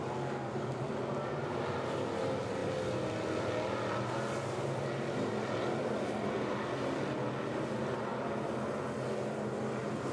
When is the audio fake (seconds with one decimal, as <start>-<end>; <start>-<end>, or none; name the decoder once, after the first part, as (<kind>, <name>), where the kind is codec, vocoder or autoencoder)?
none